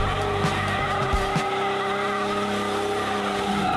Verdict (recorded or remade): recorded